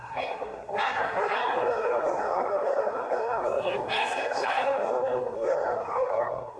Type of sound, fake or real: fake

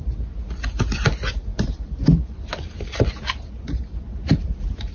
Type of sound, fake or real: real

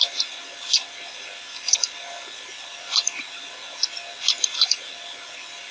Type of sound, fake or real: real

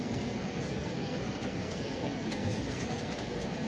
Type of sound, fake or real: fake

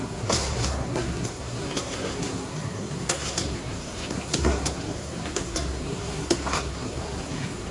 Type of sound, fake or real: fake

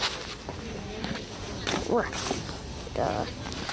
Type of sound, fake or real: real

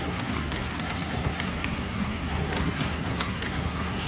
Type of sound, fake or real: fake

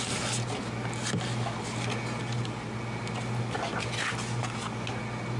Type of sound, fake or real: real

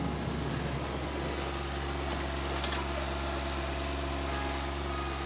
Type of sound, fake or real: real